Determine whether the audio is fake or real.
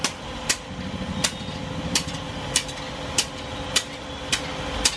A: real